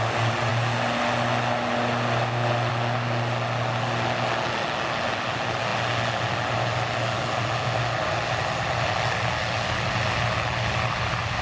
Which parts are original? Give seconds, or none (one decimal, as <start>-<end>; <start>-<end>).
0.0-11.4